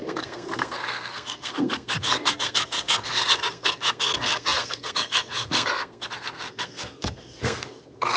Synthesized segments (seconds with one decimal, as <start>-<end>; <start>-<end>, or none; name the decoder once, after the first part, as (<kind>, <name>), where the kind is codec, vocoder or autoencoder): 0.0-8.2 (codec, SNAC)